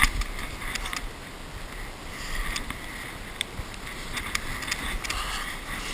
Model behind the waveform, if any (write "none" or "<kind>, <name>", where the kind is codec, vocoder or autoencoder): none